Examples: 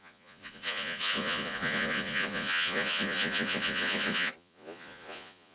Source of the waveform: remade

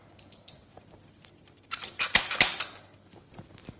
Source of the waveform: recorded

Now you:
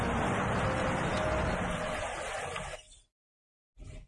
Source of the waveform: recorded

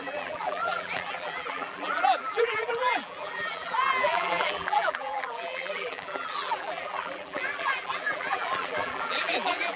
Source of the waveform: remade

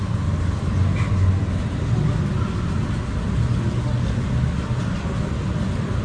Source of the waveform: recorded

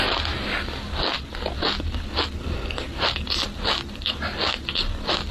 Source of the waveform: recorded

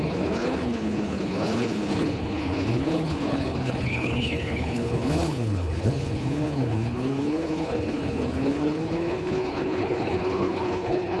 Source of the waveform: remade